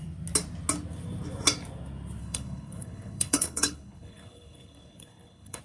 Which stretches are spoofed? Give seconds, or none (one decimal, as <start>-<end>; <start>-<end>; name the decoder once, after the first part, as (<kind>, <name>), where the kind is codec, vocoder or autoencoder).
2.2-5.6 (codec, HILCodec)